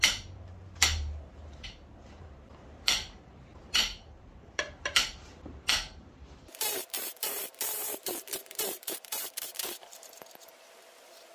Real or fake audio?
fake